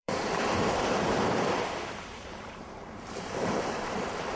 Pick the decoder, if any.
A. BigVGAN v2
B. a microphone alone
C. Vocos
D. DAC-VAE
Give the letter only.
A